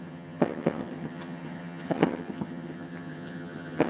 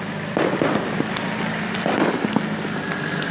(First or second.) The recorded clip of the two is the second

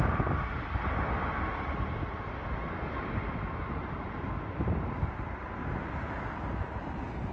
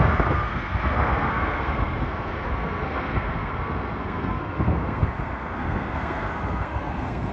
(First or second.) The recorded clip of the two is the first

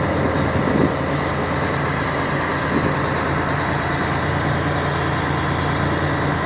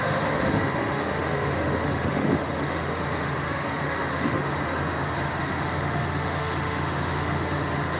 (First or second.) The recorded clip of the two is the first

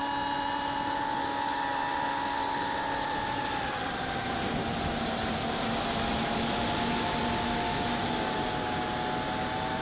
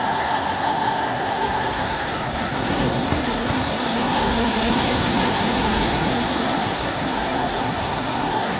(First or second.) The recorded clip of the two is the first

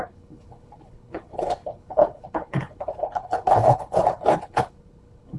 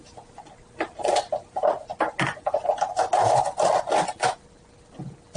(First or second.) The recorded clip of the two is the second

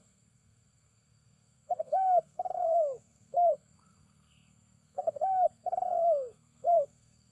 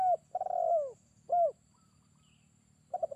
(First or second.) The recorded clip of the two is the second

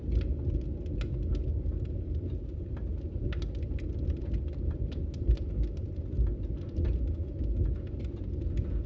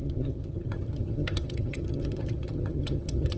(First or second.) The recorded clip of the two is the first